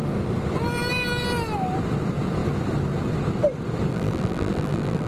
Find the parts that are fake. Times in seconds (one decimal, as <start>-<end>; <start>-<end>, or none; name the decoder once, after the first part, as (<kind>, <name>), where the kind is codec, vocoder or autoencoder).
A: 3.9-5.1 (vocoder, BigVGAN v2)